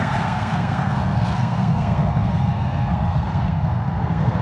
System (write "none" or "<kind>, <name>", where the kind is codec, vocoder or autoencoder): codec, SNAC